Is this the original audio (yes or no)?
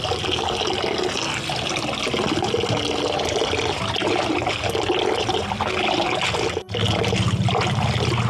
yes